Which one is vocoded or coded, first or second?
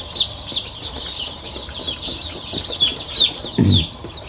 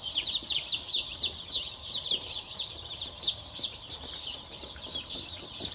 second